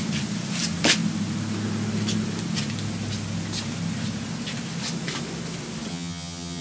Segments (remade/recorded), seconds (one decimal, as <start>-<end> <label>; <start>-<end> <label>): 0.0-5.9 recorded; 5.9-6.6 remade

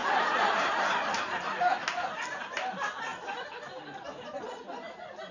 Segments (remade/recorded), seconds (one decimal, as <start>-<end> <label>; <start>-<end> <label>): 0.0-5.3 recorded

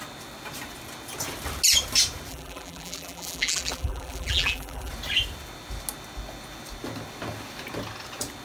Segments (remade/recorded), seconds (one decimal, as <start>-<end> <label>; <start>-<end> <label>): 0.0-2.3 recorded; 2.3-4.9 remade; 4.9-8.4 recorded